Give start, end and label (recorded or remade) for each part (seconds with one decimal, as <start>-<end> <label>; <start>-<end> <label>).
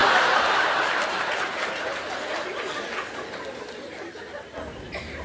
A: 0.0-2.0 remade; 2.0-5.2 recorded